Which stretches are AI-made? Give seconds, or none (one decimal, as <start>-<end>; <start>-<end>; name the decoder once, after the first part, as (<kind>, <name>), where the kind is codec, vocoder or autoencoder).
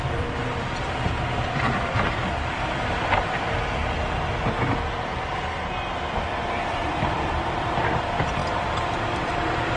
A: 0.0-3.8 (vocoder, BigVGAN v2); 6.1-9.8